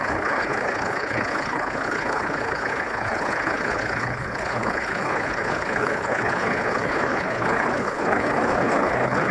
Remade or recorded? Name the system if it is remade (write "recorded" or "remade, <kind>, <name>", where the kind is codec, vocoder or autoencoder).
remade, codec, HILCodec